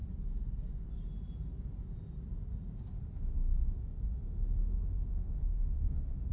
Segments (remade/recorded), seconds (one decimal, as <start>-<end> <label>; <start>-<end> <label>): 0.0-3.0 recorded; 3.0-6.3 remade